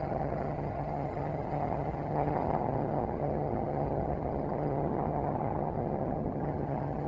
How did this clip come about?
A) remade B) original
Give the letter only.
A